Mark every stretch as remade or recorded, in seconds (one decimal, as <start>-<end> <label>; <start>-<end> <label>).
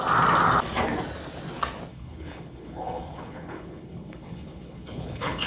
0.0-1.9 recorded; 1.9-5.5 remade